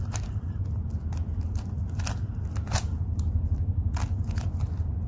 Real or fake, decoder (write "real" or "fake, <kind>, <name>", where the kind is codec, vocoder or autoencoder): real